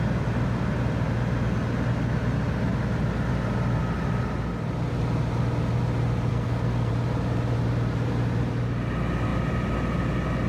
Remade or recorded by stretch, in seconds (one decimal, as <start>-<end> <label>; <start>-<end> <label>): 0.0-6.3 recorded; 6.3-6.9 remade; 6.9-10.5 recorded

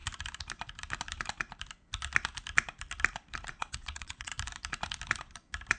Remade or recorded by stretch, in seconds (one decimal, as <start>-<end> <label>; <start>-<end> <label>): 0.0-3.5 recorded; 3.5-4.3 remade; 4.3-5.8 recorded

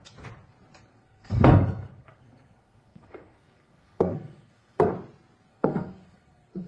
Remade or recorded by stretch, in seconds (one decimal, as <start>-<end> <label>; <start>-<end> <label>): 0.0-0.9 recorded; 0.9-4.9 remade; 4.9-5.5 recorded; 5.5-6.7 remade

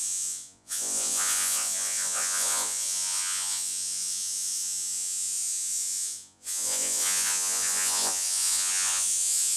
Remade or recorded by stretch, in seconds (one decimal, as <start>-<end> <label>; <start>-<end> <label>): 0.0-9.6 remade

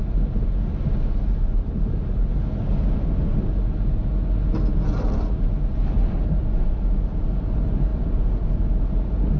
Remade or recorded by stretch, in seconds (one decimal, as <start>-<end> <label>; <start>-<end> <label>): 0.0-9.4 recorded

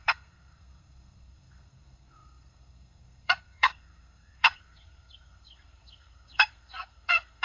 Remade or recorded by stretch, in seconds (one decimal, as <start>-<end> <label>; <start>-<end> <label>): 0.0-7.4 remade